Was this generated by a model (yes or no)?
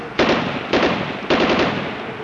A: no